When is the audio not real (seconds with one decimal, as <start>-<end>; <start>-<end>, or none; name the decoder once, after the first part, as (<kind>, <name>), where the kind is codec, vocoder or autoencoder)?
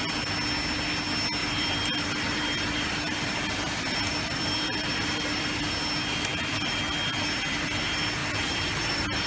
1.4-5.7 (vocoder, BigVGAN v2); 6.3-6.8; 8.2-9.3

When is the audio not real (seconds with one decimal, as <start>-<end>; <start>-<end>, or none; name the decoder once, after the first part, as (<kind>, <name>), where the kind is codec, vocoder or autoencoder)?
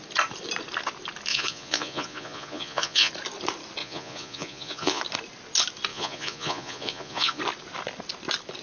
1.3-3.1 (vocoder, Vocos); 3.8-5.0; 5.9-7.4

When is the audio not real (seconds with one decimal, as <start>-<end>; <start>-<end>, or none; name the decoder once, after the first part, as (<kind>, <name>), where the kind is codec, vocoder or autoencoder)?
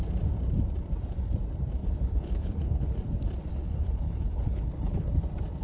1.8-3.1 (codec, HILCodec); 3.5-5.1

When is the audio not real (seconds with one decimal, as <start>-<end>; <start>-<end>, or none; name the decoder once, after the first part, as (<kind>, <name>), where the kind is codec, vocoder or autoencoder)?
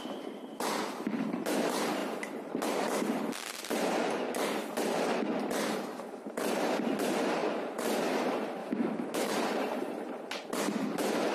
8.6-9.3 (autoencoder, DAC-VAE)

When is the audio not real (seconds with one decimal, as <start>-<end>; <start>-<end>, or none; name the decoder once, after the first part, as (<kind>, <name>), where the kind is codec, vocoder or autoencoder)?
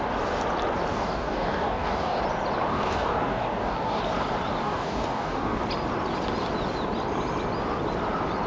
0.9-2.2 (codec, DAC); 2.7-4.0; 4.6-5.6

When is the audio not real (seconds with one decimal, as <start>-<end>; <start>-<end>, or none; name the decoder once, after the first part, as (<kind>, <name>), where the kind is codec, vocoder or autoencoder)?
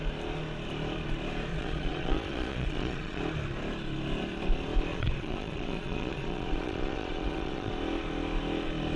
1.5-3.2 (vocoder, Vocos); 4.9-7.7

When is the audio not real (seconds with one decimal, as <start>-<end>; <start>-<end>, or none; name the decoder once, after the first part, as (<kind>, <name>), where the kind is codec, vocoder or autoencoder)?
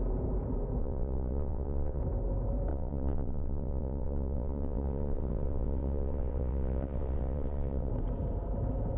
0.8-2.0 (vocoder, WaveNeXt); 2.7-7.9